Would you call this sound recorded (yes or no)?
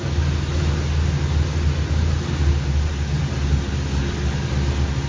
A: yes